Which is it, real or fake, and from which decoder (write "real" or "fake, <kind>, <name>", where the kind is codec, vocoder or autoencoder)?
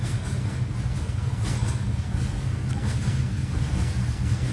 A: fake, codec, SNAC